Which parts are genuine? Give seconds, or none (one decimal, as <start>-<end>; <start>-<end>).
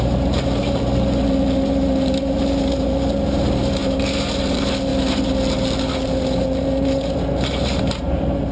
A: 4.9-5.9